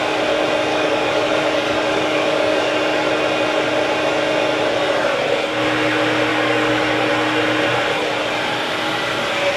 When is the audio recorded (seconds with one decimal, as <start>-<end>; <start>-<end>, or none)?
0.0-0.7; 3.1-6.3; 7.1-9.6

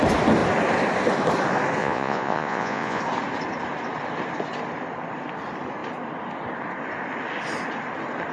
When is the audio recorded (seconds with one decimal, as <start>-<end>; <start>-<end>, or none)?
0.0-1.8; 3.0-8.3

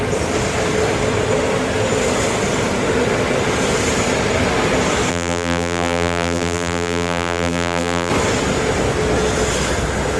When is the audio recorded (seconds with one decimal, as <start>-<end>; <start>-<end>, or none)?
0.0-5.1; 8.1-10.2